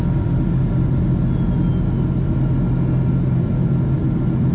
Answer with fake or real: real